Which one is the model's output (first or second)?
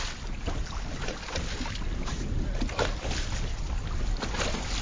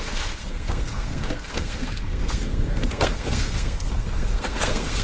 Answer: second